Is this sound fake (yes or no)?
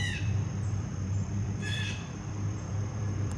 yes